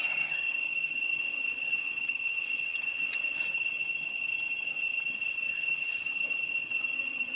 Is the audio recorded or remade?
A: remade